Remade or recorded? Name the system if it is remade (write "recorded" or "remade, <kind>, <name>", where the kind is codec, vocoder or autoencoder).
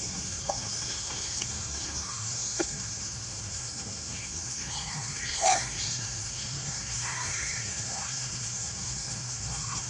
remade, codec, SNAC